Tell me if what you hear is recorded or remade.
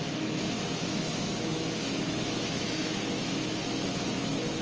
remade